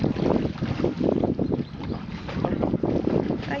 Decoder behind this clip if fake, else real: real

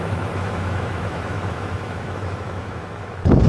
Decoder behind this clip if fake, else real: fake, autoencoder, DAC-VAE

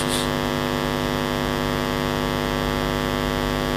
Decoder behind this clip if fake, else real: real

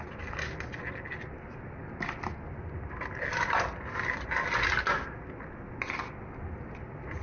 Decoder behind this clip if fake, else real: real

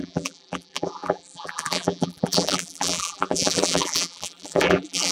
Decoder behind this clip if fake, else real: fake, vocoder, BigVGAN v2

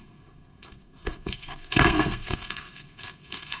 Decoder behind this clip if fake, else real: fake, codec, SNAC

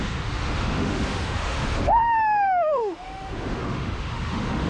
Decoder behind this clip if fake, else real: fake, autoencoder, DAC-VAE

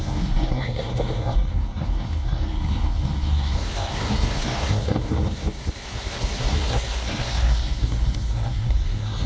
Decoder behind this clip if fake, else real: fake, codec, SNAC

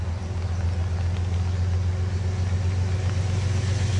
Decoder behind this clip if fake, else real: real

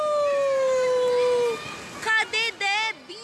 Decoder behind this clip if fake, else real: real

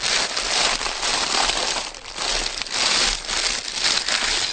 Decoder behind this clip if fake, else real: real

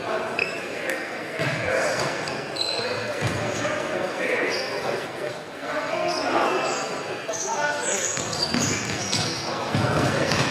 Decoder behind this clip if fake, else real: fake, codec, SNAC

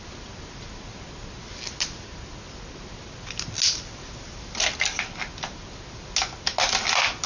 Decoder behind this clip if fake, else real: real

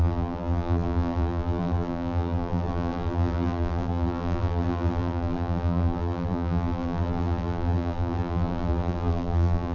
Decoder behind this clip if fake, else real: fake, vocoder, BigVGAN v2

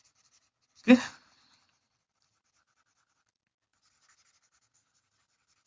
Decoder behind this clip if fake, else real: fake, vocoder, BigVGAN v2